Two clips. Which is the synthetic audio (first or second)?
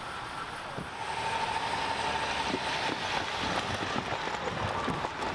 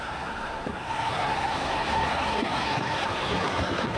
second